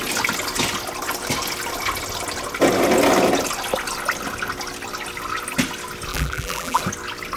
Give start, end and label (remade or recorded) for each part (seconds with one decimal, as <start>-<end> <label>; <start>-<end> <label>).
0.0-6.1 recorded; 6.1-6.8 remade; 6.8-7.4 recorded